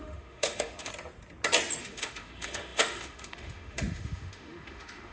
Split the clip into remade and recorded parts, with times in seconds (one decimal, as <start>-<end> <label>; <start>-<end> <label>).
0.0-0.9 remade; 0.9-1.8 recorded; 1.8-5.1 remade